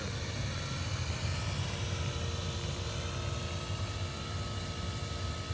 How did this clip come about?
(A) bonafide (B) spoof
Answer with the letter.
A